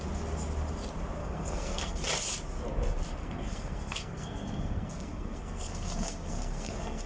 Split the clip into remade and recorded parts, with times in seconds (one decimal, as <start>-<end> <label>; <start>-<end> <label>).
0.0-1.2 recorded; 1.2-2.0 remade; 2.0-3.2 recorded; 3.2-7.1 remade